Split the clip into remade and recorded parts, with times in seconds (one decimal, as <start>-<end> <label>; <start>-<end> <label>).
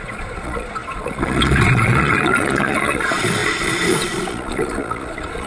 0.0-5.5 remade